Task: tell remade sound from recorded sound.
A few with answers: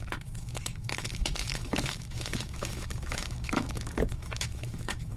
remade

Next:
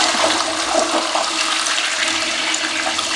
recorded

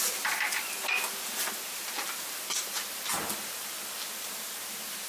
recorded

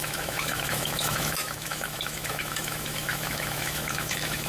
remade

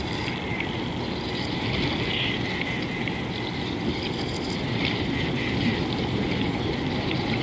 recorded